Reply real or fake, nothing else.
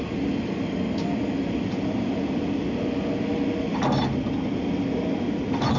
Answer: real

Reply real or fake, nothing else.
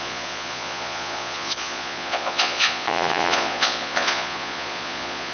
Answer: fake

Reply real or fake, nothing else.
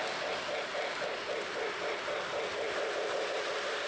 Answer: real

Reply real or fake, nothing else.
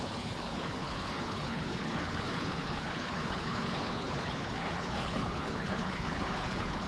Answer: fake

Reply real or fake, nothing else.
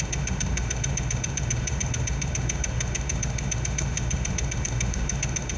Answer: fake